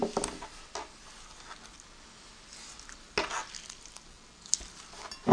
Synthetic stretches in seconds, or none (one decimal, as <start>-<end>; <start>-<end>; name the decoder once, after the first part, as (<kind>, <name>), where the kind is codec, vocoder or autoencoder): none